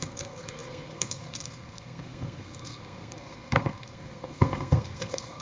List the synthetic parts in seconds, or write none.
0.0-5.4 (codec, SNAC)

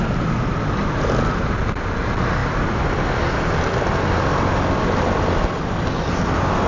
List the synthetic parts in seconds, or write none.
none

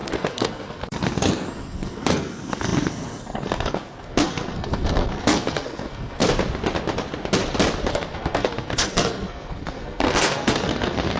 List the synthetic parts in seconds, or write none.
0.0-6.2 (codec, SNAC); 7.9-11.2